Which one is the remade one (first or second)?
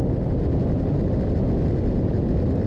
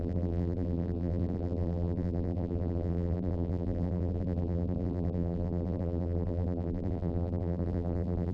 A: second